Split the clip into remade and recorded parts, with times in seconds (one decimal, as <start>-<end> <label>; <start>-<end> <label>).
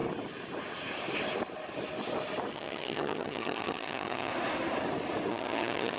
0.0-2.5 recorded; 2.5-4.3 remade; 4.3-5.3 recorded; 5.3-6.0 remade